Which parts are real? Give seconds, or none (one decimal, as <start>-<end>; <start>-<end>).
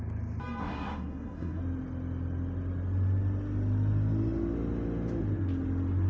0.0-0.6; 1.6-6.1